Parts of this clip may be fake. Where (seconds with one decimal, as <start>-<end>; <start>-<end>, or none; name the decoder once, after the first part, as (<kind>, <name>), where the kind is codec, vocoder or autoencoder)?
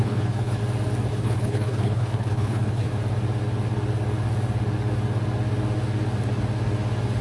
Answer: 0.0-0.6 (codec, HILCodec); 1.1-2.9